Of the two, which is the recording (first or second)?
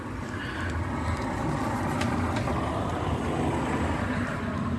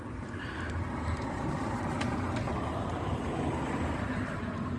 first